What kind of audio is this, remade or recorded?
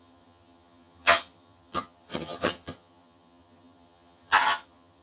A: remade